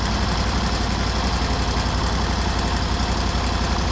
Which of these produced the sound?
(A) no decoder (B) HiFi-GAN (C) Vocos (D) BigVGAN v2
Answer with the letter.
A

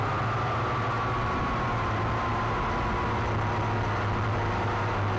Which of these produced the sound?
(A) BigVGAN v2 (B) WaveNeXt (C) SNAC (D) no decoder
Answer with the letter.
D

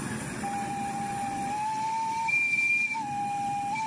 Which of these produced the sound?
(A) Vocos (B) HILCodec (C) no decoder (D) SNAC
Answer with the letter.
C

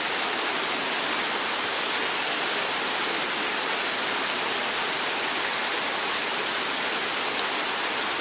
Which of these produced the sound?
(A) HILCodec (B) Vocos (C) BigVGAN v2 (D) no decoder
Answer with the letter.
D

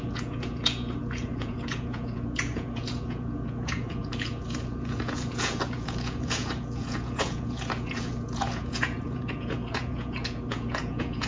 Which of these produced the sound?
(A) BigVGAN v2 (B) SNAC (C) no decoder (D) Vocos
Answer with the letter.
D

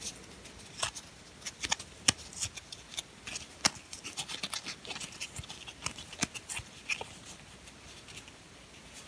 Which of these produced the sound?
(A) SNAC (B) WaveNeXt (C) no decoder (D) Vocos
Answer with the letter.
C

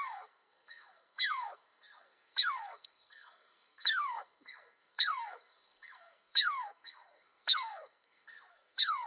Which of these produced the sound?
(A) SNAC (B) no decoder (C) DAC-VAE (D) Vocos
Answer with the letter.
A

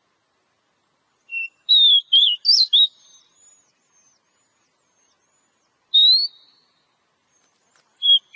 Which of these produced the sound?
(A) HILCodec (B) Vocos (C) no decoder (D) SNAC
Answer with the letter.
C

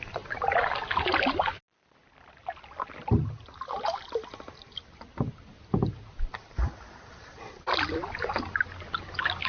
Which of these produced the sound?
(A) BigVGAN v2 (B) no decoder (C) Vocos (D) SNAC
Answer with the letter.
B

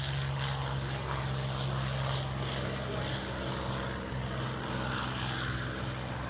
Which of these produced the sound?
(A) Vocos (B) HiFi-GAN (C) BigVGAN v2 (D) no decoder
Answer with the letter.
D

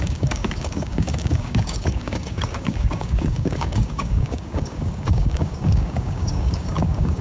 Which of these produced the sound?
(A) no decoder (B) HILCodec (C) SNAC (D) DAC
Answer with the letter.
D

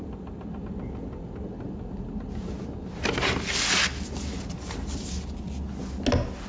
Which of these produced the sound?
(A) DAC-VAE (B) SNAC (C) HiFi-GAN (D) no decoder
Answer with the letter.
D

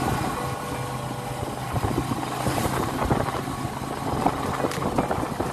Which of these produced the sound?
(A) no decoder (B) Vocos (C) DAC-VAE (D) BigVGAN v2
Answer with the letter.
A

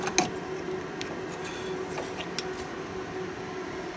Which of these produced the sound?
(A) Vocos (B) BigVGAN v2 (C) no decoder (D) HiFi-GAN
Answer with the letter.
C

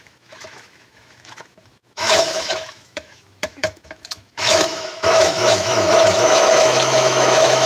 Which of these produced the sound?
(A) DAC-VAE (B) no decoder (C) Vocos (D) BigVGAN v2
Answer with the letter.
A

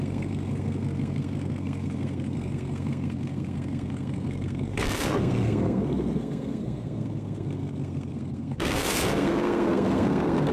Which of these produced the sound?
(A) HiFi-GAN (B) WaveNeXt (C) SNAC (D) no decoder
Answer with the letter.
C